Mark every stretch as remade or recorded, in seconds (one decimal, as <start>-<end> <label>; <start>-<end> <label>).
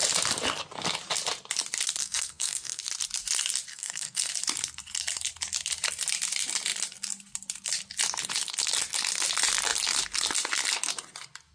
0.0-2.0 recorded; 2.0-2.8 remade; 2.8-3.7 recorded; 3.7-4.3 remade; 4.3-11.5 recorded